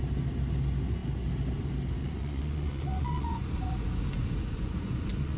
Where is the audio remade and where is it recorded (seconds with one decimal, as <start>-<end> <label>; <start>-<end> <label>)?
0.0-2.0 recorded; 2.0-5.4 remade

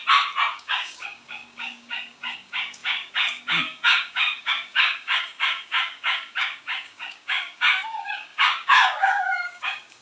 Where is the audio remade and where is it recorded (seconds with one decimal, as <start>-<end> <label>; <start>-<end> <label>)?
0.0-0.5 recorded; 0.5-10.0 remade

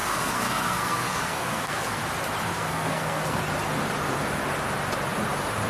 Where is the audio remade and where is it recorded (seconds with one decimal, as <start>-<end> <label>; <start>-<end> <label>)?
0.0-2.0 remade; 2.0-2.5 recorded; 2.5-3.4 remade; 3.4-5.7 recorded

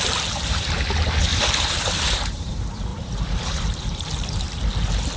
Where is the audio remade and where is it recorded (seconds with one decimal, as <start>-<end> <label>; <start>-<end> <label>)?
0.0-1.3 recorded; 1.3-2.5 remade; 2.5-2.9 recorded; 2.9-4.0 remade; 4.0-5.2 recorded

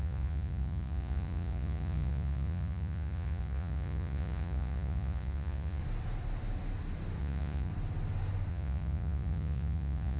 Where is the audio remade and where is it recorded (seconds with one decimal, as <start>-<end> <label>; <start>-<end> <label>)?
0.0-5.8 remade; 5.8-7.2 recorded; 7.2-7.7 remade; 7.7-8.5 recorded; 8.5-10.2 remade

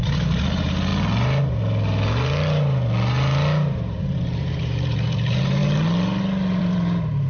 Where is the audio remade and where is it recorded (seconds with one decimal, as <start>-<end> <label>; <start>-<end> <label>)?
0.0-0.9 remade; 0.9-4.0 recorded; 4.0-5.6 remade; 5.6-6.6 recorded; 6.6-7.3 remade

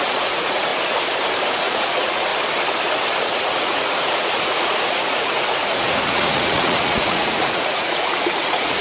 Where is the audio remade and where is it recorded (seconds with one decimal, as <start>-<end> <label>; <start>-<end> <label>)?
0.0-0.7 remade; 0.7-1.5 recorded; 1.5-2.3 remade; 2.3-3.4 recorded; 3.4-8.8 remade